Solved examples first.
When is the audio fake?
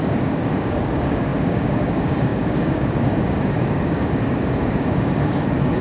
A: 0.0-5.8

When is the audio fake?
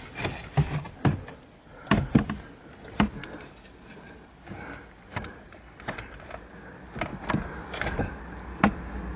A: none